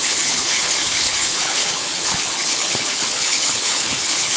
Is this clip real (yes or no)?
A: no